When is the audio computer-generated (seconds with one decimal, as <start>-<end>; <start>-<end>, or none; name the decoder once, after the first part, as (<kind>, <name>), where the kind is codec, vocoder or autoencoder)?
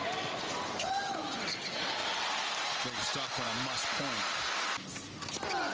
0.0-2.0 (vocoder, BigVGAN v2)